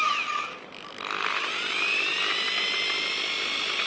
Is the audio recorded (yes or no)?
yes